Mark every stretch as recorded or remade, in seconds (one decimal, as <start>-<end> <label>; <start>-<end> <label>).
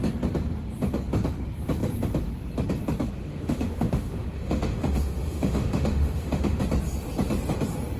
0.0-3.2 recorded; 3.2-6.6 remade; 6.6-8.0 recorded